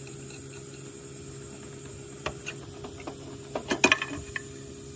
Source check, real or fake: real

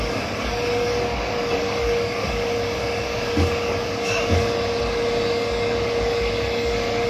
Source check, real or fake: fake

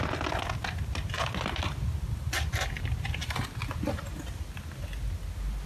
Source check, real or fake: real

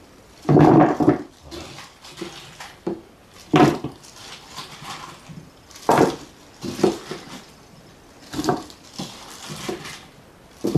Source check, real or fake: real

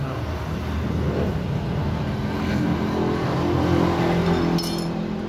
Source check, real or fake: real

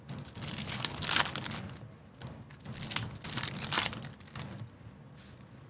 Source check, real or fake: real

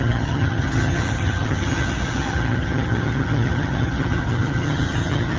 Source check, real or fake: fake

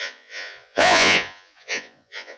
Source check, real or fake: fake